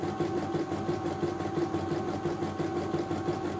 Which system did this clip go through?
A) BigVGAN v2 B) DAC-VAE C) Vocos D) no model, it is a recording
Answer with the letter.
D